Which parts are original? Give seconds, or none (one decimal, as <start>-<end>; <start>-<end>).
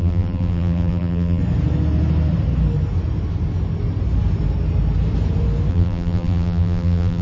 1.4-5.7